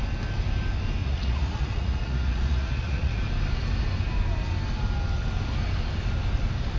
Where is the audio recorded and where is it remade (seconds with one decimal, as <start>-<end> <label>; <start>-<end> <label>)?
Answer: 0.0-1.0 recorded; 1.0-3.2 remade; 3.2-6.8 recorded